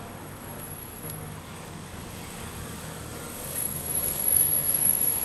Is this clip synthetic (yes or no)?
yes